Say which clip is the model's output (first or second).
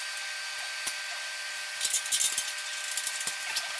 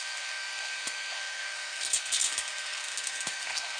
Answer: second